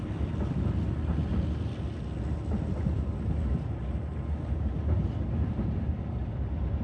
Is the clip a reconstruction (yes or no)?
no